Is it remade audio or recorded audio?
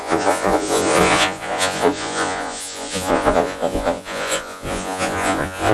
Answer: remade